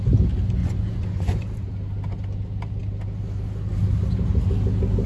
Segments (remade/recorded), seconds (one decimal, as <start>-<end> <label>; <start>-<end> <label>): 0.0-0.6 recorded; 0.6-1.7 remade; 1.7-5.1 recorded